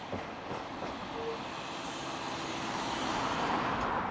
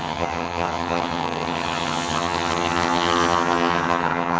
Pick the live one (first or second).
first